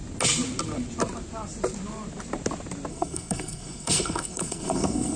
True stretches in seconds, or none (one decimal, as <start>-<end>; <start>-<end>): 0.0-2.9